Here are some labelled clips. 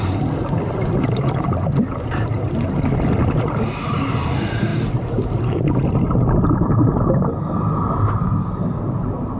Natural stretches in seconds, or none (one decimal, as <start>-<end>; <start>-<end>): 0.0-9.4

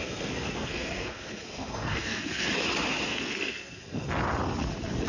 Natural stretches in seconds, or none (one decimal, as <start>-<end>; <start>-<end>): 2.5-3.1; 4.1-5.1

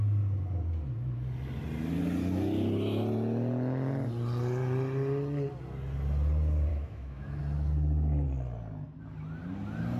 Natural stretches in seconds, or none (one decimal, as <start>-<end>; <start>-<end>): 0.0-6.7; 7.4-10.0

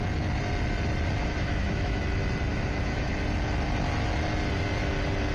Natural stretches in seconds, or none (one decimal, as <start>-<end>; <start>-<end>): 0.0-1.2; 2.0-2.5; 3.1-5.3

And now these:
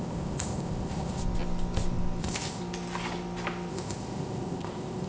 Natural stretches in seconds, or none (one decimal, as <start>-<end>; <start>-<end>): 1.2-2.2; 2.6-3.7

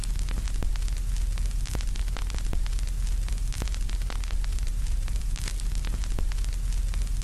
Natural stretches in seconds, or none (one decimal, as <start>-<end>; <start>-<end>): 0.0-4.5; 5.5-7.2

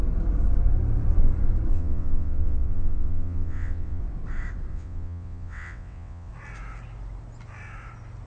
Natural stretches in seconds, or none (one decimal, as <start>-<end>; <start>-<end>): 0.0-1.7; 4.0-4.7; 6.3-8.3

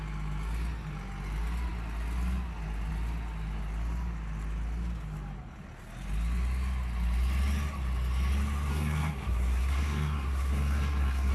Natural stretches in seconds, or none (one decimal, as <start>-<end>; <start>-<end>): 0.0-8.7